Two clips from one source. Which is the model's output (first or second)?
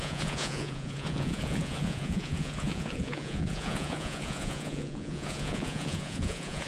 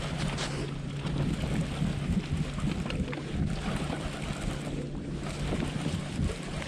first